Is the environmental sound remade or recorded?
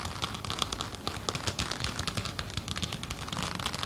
recorded